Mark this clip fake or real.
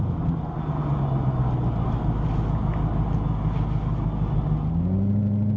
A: real